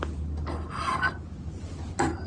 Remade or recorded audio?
recorded